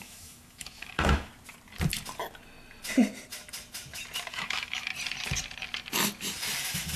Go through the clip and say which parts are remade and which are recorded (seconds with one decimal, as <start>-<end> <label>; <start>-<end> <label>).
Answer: 0.0-1.3 remade; 1.3-4.3 recorded; 4.3-4.9 remade; 4.9-6.6 recorded; 6.6-7.0 remade